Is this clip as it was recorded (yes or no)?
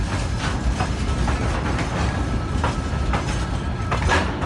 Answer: yes